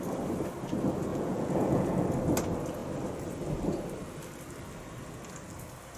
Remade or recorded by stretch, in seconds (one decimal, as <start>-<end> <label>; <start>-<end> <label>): 0.0-1.1 recorded; 1.1-1.9 remade; 1.9-6.0 recorded